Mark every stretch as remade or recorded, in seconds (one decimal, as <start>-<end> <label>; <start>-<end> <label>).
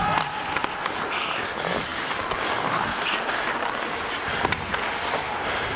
0.0-5.8 recorded